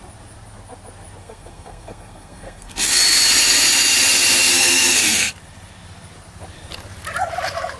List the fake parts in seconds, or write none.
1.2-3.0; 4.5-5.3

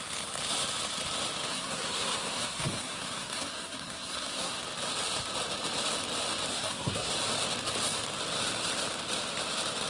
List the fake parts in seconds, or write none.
1.5-4.6; 6.5-7.1

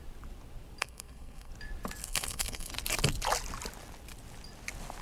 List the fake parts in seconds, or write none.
0.8-1.5; 2.0-2.7

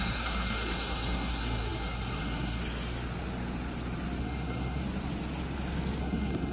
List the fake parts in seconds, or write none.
0.0-2.6; 4.2-4.8; 6.0-6.5

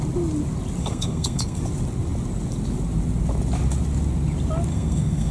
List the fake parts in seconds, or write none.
0.8-1.6; 4.7-5.3

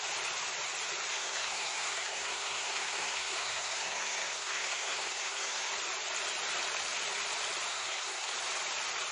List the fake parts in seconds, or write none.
1.1-5.7; 7.7-8.3

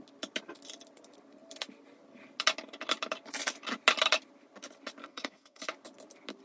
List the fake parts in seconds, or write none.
5.0-5.6